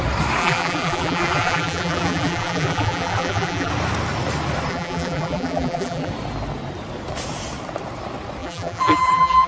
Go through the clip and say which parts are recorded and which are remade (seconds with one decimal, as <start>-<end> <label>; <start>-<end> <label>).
0.0-0.4 recorded; 0.4-3.7 remade; 3.7-4.7 recorded; 4.7-6.1 remade; 6.1-8.4 recorded; 8.4-9.5 remade